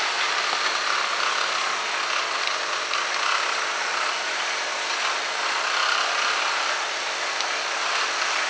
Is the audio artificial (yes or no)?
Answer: no